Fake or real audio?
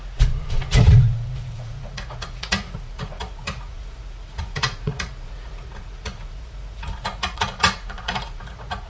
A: fake